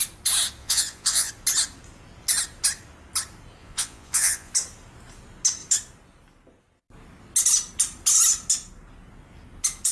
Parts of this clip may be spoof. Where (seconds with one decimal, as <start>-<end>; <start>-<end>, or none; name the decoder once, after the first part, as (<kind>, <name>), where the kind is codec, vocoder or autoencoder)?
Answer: 0.6-1.3 (vocoder, Vocos); 3.6-4.5